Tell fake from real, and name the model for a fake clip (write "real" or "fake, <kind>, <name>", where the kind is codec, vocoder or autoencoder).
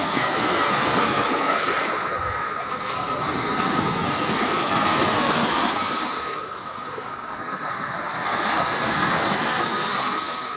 fake, codec, SNAC